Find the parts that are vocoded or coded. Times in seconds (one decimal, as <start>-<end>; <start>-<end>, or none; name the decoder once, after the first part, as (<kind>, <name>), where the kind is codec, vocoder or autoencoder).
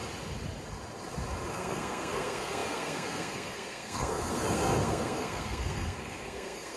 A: 1.5-6.8 (codec, SNAC)